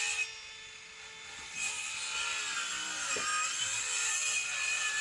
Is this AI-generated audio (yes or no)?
no